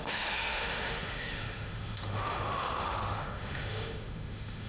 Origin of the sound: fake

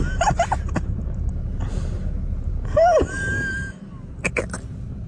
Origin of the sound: real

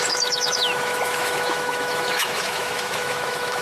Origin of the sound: fake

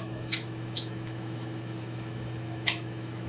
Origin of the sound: fake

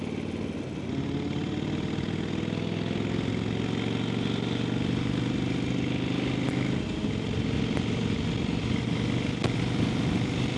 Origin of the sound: real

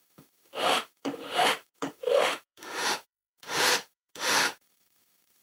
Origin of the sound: fake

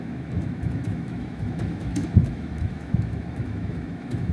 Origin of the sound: fake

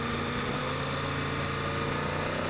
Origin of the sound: real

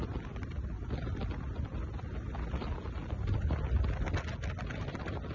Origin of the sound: real